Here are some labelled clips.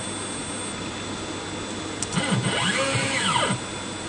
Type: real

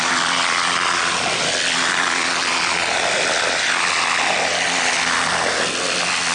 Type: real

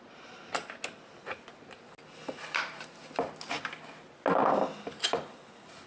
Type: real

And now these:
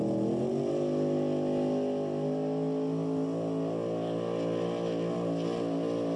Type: real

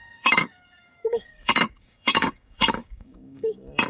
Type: fake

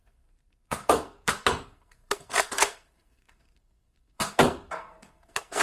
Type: fake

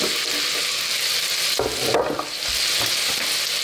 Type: real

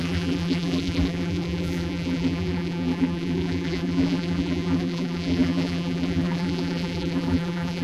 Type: fake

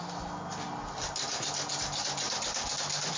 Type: real